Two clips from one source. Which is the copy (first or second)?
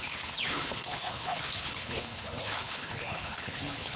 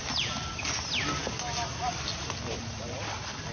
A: first